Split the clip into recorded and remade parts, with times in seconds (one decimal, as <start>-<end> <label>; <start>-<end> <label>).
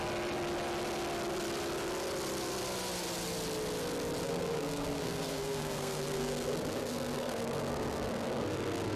0.0-4.2 recorded; 4.2-9.0 remade